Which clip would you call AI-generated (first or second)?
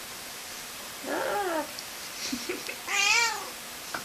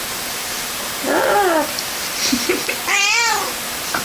first